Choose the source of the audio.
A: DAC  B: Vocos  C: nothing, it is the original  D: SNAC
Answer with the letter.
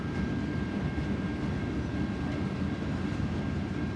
C